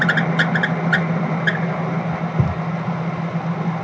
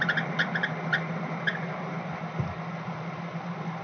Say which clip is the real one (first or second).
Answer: first